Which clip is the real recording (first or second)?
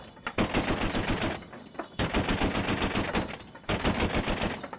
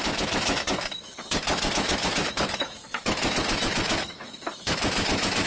first